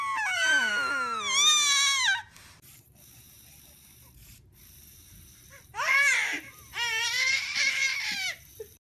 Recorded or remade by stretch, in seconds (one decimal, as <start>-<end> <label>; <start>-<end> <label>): 0.0-0.7 remade; 0.7-2.5 recorded; 2.5-8.8 remade